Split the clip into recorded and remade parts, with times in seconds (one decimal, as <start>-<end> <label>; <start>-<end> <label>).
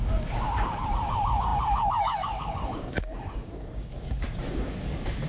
0.0-5.3 remade